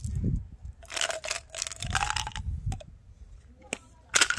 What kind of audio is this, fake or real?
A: real